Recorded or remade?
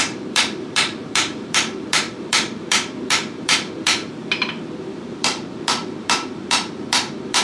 remade